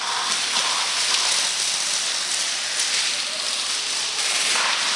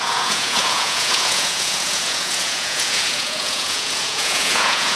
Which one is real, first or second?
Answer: first